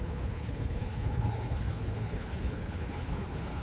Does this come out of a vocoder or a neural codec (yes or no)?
yes